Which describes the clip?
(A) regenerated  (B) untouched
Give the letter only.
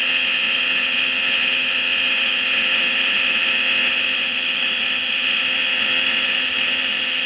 A